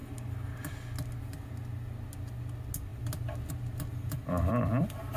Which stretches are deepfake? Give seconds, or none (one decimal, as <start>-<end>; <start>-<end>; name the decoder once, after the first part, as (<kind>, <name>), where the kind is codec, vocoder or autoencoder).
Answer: 3.9-5.2 (vocoder, BigVGAN v2)

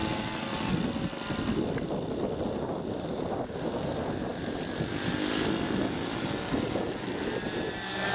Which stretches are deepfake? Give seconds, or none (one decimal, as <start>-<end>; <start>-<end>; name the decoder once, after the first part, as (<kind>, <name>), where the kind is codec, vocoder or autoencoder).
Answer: none

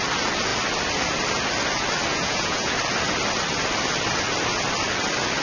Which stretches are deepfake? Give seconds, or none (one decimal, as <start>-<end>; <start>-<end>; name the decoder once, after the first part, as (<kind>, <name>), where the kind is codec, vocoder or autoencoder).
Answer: 2.1-2.7 (vocoder, Vocos)

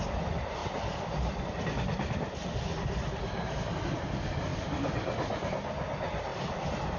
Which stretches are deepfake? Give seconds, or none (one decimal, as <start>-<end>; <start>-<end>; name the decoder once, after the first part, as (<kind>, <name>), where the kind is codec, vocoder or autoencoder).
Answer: 0.6-1.6 (vocoder, BigVGAN v2); 6.3-7.0

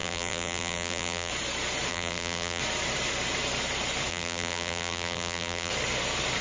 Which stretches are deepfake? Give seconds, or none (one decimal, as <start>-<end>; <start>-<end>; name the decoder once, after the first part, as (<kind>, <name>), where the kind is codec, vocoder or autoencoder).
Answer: 0.0-1.3 (vocoder, BigVGAN v2); 1.9-2.6; 4.1-5.7

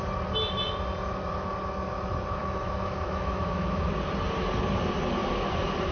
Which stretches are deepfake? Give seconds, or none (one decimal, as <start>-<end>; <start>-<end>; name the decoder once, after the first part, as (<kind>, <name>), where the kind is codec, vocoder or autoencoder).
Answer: 2.4-3.9 (autoencoder, DAC-VAE)